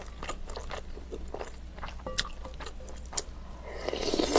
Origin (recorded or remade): recorded